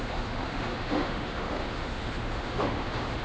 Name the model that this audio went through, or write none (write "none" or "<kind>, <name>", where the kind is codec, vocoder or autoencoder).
autoencoder, DAC-VAE